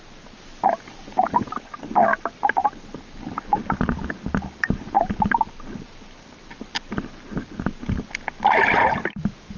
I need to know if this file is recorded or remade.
recorded